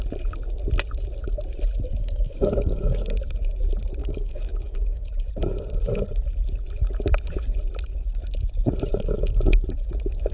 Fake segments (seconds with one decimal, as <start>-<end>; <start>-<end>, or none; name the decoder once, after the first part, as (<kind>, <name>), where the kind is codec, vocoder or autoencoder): 2.0-3.2 (codec, DAC); 4.0-5.3